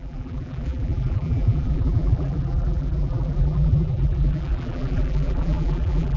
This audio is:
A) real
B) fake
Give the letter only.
B